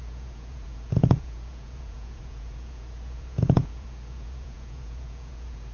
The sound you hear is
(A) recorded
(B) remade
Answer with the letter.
B